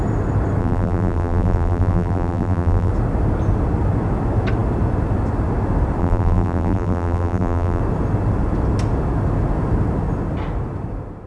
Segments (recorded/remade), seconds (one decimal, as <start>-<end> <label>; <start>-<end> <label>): 0.0-0.6 recorded; 0.6-2.9 remade; 2.9-6.0 recorded; 6.0-7.8 remade; 7.8-11.3 recorded